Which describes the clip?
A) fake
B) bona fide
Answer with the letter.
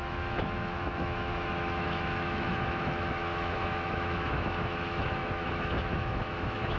A